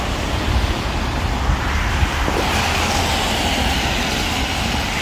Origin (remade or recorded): recorded